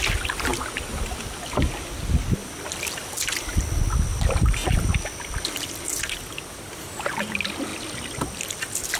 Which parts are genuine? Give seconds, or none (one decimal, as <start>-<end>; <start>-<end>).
0.0-2.4; 3.6-4.1; 6.0-7.7; 8.4-9.0